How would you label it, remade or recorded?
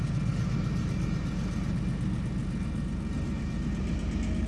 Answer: recorded